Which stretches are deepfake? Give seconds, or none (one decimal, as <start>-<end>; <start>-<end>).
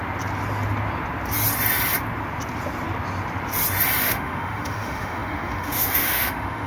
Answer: 4.0-6.7